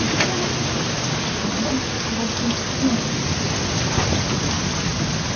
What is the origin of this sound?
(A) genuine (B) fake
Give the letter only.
A